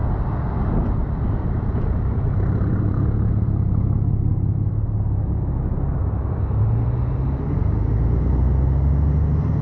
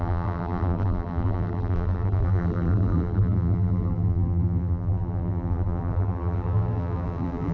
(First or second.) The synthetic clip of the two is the second